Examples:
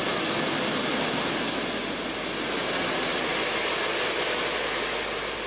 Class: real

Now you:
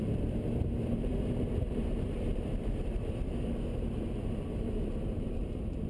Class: fake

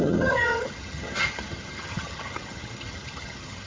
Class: fake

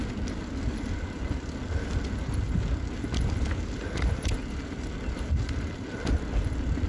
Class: real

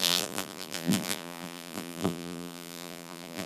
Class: fake